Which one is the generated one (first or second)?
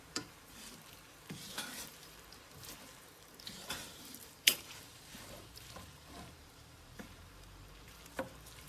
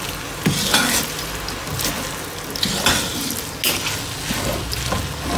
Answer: first